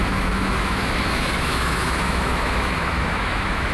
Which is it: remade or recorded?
remade